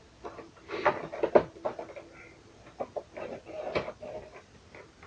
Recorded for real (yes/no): yes